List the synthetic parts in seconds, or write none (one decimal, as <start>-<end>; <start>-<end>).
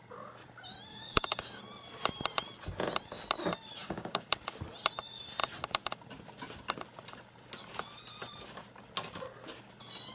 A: 0.9-1.6; 3.8-4.3